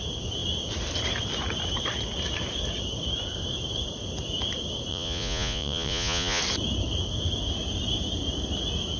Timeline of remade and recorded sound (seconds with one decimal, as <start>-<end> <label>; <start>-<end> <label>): 0.0-4.9 recorded; 4.9-6.4 remade; 6.4-9.0 recorded